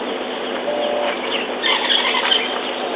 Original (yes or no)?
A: yes